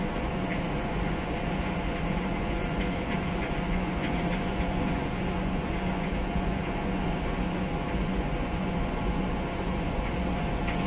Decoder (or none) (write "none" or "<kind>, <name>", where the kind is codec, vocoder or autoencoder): vocoder, Vocos